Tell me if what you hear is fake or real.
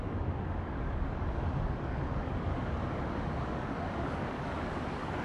fake